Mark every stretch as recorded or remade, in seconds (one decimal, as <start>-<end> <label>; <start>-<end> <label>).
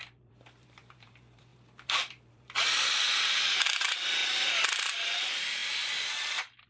0.0-4.2 remade; 4.2-4.7 recorded; 4.7-6.7 remade